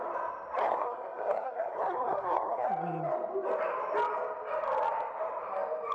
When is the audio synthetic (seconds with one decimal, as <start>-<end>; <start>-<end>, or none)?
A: 0.6-2.7